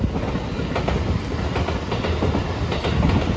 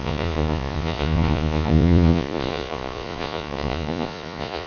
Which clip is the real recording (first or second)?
first